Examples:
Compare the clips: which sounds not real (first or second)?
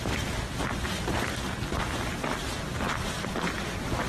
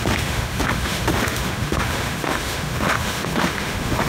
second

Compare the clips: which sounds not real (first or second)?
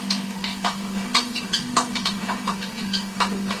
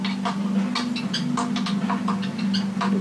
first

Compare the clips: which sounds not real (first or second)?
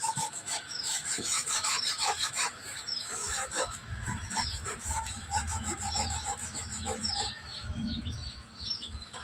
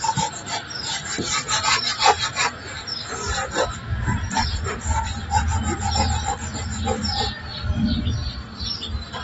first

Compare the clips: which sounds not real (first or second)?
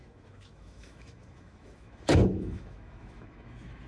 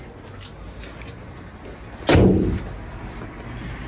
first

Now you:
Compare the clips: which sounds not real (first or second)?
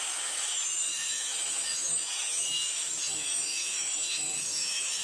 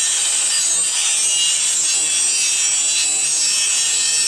first